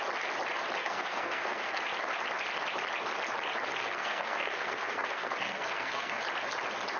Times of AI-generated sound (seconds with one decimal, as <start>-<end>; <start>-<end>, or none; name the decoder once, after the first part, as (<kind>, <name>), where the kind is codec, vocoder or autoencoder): 0.8-1.8 (codec, SNAC); 3.8-6.2